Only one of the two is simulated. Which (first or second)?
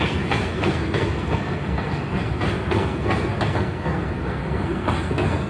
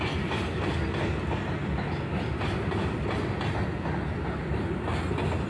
first